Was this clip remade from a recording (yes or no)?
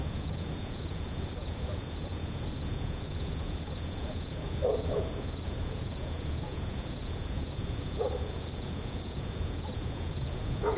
yes